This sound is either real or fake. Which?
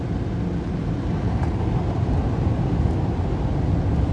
real